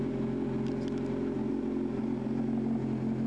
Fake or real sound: real